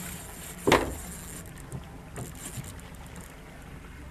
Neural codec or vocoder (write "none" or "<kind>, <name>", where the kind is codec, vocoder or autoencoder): none